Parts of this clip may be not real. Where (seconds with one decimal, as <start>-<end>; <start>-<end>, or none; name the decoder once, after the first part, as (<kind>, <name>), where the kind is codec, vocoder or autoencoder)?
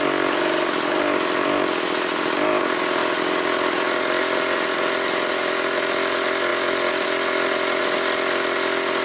none